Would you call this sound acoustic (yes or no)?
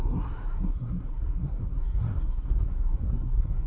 no